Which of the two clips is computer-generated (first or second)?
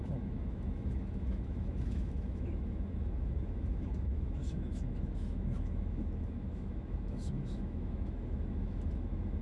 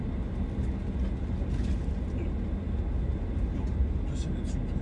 first